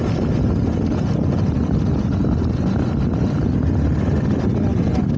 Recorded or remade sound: recorded